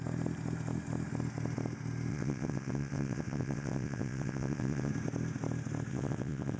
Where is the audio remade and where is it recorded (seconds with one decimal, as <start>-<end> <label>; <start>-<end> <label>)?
0.0-2.1 recorded; 2.1-4.9 remade; 4.9-5.9 recorded; 5.9-6.6 remade